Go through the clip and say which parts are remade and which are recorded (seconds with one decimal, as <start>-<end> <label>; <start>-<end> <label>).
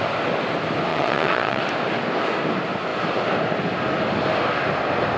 0.0-0.9 recorded; 0.9-1.6 remade; 1.6-5.2 recorded